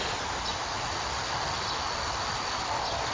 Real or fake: real